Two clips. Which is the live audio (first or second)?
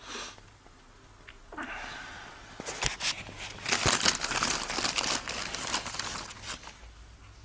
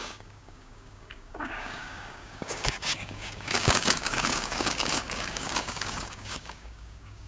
first